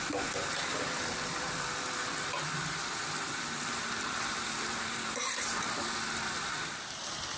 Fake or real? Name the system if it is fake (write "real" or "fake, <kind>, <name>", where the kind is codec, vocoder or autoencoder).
fake, vocoder, BigVGAN v2